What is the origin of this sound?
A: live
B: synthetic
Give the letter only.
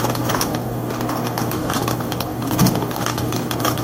B